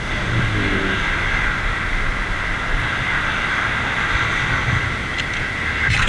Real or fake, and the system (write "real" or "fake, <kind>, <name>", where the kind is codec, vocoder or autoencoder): real